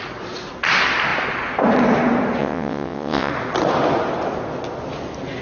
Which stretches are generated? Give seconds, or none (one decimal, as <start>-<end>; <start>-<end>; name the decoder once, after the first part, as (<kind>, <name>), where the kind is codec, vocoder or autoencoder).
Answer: 2.4-3.3 (vocoder, WaveNeXt)